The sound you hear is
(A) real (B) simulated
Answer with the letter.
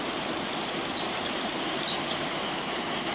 A